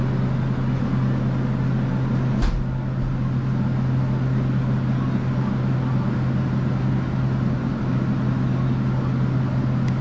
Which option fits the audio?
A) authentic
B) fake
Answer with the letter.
A